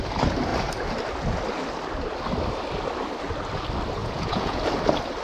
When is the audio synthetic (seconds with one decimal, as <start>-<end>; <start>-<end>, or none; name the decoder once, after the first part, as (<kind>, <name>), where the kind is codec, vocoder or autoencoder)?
4.0-4.7 (vocoder, Vocos)